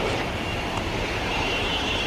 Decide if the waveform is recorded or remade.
remade